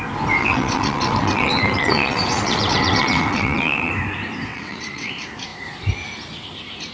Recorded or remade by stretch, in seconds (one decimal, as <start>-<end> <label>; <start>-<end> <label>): 0.0-0.4 recorded; 0.4-3.9 remade; 3.9-4.5 recorded; 4.5-5.1 remade; 5.1-6.9 recorded